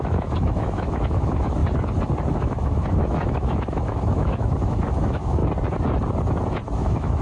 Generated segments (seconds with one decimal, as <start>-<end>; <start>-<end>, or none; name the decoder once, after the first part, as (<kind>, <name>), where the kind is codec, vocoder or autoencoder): 0.0-1.6 (autoencoder, DAC-VAE); 2.3-5.4; 6.8-7.2